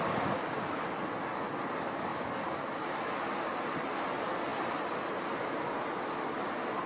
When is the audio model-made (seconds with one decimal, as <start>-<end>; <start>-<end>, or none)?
4.5-5.1